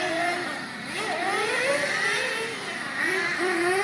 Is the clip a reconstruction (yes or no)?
no